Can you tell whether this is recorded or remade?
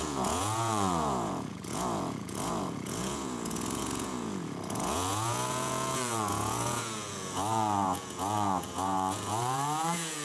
remade